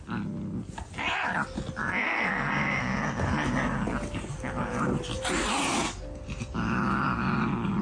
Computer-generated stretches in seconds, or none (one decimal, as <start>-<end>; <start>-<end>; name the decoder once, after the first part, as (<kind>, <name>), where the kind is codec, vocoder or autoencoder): 1.8-2.8 (codec, SNAC)